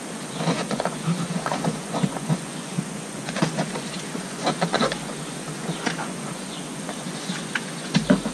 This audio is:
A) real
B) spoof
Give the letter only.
B